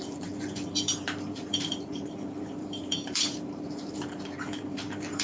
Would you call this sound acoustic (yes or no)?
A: no